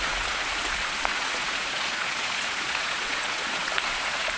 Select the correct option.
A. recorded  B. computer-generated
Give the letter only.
B